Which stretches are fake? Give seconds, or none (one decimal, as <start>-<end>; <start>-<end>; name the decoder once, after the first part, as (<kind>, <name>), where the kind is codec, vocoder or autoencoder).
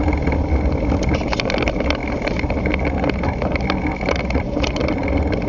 none